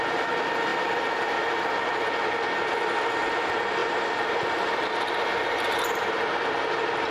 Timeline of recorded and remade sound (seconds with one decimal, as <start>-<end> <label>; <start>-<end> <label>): 0.0-0.7 recorded; 0.7-2.0 remade; 2.0-3.8 recorded; 3.8-5.9 remade; 5.9-7.1 recorded